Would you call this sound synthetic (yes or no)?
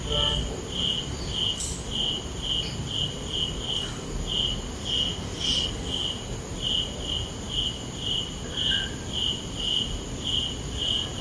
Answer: no